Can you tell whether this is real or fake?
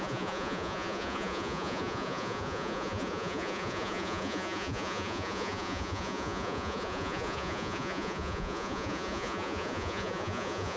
fake